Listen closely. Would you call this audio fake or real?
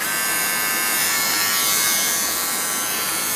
fake